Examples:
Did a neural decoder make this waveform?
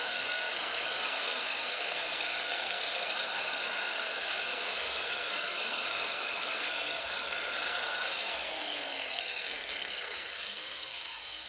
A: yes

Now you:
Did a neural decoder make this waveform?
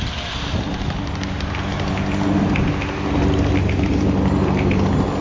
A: no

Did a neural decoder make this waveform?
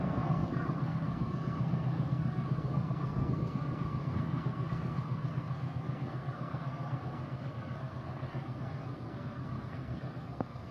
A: yes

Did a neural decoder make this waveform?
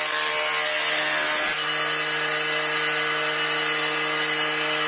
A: no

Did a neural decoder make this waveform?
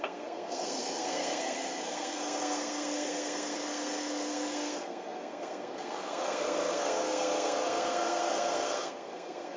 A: yes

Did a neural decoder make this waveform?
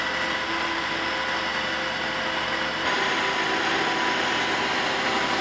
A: no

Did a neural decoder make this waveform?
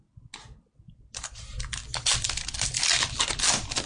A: no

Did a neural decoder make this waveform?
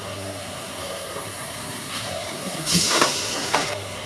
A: yes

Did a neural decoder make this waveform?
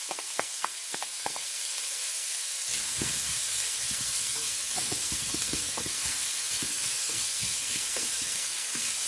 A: yes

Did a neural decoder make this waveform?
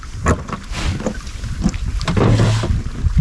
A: no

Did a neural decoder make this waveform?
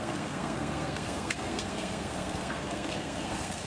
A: yes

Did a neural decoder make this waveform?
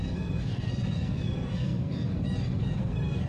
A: yes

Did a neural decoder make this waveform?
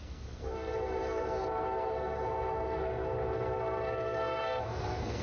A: yes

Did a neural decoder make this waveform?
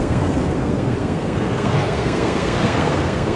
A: yes